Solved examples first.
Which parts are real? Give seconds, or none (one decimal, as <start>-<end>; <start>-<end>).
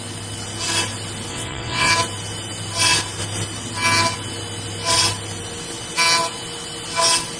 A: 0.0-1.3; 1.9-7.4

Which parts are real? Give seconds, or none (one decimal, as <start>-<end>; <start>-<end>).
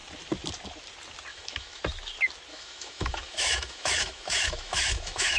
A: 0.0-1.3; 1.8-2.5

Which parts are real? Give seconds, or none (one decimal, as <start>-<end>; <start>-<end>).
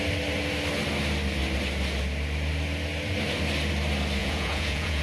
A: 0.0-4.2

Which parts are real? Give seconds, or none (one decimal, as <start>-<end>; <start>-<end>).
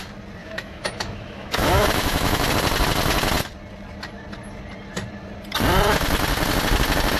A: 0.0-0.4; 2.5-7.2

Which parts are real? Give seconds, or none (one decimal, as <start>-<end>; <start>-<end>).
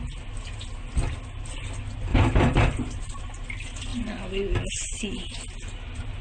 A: 0.0-2.1; 3.2-6.2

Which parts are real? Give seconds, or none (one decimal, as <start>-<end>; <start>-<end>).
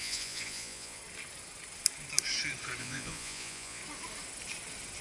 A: 1.0-2.8; 3.8-5.0